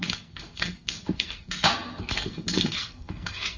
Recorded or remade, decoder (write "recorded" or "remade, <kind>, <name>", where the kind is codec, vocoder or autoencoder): remade, codec, SNAC